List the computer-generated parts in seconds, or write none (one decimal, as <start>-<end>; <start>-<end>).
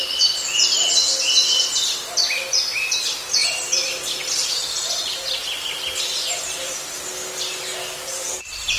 none